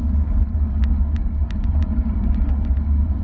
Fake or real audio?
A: real